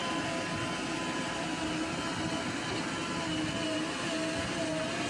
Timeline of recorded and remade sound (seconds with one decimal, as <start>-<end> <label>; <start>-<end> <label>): 0.0-5.1 recorded